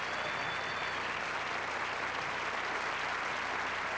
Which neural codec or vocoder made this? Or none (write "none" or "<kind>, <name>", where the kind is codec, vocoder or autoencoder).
none